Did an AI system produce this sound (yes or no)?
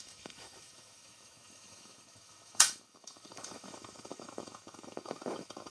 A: yes